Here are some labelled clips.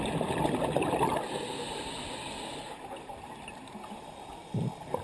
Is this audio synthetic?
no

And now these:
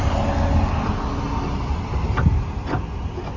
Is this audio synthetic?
no